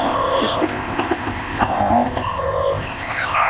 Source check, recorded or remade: remade